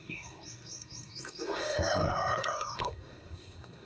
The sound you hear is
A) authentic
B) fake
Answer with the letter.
B